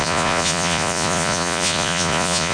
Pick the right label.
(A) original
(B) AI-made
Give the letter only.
B